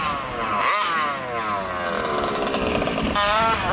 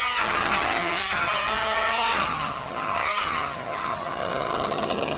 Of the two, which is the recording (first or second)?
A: first